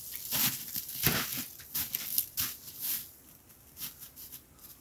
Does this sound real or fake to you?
real